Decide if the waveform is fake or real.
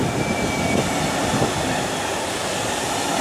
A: real